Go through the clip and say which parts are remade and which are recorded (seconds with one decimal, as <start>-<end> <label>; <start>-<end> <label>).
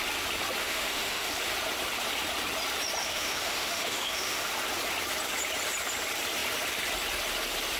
0.0-0.6 recorded; 0.6-1.3 remade; 1.3-3.0 recorded; 3.0-4.5 remade; 4.5-7.8 recorded